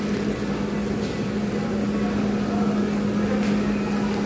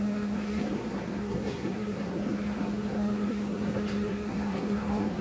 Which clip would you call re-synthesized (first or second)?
second